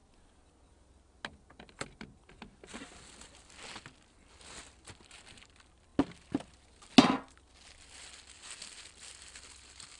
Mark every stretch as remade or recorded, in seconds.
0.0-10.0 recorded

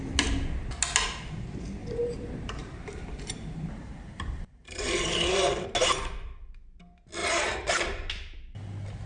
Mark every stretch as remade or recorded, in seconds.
0.0-1.8 recorded; 1.8-5.5 remade; 5.5-7.2 recorded; 7.2-7.8 remade; 7.8-9.1 recorded

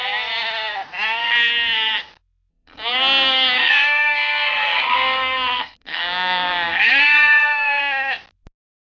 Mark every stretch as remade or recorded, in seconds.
0.0-1.2 recorded; 1.2-2.0 remade; 2.0-2.5 recorded; 2.5-7.8 remade; 7.8-8.8 recorded